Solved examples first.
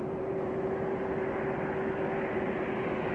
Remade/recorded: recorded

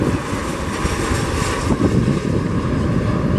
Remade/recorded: recorded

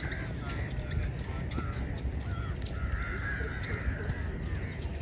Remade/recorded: recorded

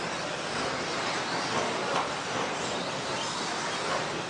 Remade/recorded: recorded